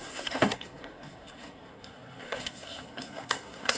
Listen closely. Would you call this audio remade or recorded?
remade